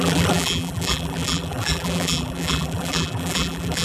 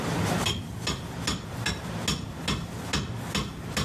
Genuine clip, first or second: second